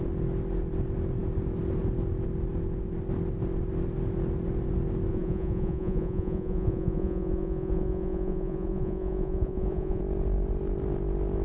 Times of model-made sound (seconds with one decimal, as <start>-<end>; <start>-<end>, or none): 5.1-10.0